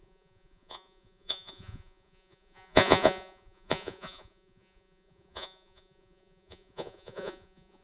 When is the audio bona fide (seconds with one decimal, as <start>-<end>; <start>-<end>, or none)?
none